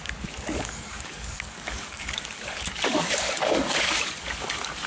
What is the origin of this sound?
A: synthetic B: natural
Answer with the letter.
A